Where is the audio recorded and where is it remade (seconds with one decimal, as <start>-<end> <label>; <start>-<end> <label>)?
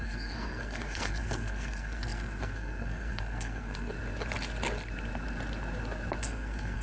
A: 0.0-3.9 remade; 3.9-6.2 recorded; 6.2-6.8 remade